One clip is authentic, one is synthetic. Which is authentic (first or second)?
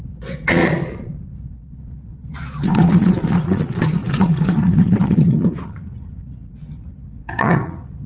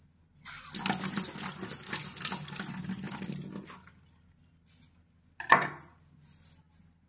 second